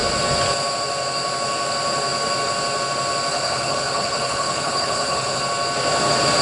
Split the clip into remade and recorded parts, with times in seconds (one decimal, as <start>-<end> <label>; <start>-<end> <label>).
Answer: 0.0-3.3 recorded; 3.3-5.4 remade; 5.4-6.4 recorded